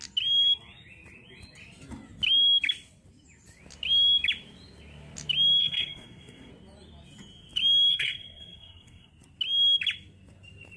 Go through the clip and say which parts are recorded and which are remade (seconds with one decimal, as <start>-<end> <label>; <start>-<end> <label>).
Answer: 0.0-5.6 recorded; 5.6-6.5 remade; 6.5-7.9 recorded; 7.9-9.1 remade; 9.1-10.8 recorded